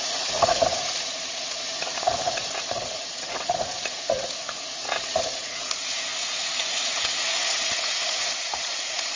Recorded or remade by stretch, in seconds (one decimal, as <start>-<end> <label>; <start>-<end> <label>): 0.0-9.2 remade